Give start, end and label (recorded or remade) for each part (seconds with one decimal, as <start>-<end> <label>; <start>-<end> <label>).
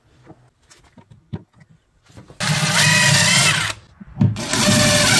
0.0-5.2 recorded